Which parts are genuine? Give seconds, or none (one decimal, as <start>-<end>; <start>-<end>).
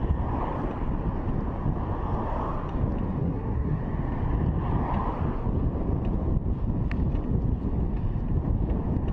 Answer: 0.0-3.2; 3.8-9.1